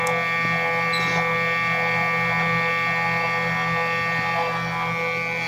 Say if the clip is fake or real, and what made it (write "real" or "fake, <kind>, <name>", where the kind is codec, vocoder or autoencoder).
real